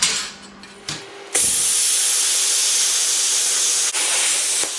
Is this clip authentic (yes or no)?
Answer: yes